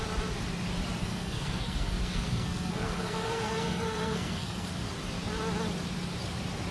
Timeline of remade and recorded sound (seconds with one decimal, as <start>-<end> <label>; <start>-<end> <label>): 0.0-1.0 recorded; 1.0-4.7 remade; 4.7-6.7 recorded